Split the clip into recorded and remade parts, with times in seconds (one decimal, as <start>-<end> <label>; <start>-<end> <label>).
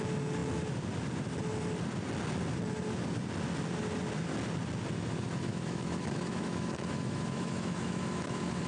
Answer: 0.0-5.5 recorded; 5.5-8.7 remade